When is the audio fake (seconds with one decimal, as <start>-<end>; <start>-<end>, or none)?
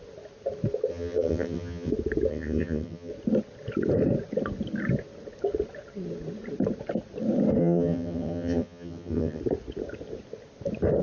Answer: 0.9-1.9; 2.3-3.1; 7.6-9.4